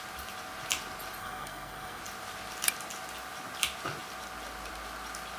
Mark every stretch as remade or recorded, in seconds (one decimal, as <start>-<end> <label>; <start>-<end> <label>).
0.0-1.2 recorded; 1.2-2.0 remade; 2.0-5.4 recorded